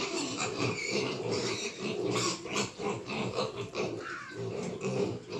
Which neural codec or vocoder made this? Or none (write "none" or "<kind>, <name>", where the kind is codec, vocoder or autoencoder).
vocoder, BigVGAN v2